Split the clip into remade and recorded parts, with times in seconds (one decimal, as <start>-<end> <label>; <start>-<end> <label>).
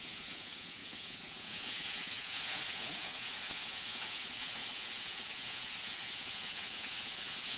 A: 0.0-7.6 remade